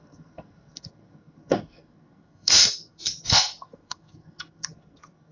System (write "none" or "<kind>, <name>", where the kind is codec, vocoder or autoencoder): codec, SNAC